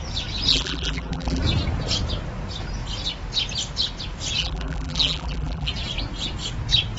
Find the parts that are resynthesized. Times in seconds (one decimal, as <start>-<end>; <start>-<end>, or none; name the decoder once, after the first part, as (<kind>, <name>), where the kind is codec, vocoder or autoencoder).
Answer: 0.5-1.4 (vocoder, BigVGAN v2); 4.4-5.7